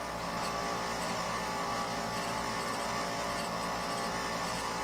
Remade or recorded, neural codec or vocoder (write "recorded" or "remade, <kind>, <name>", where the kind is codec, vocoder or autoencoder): recorded